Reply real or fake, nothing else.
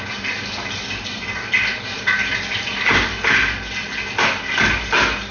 real